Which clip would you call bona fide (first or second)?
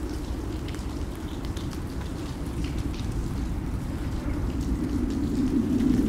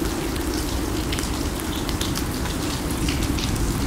second